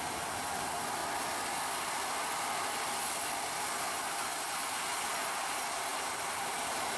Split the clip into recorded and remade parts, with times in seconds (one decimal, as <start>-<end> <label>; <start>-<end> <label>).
0.0-1.0 remade; 1.0-5.2 recorded; 5.2-7.0 remade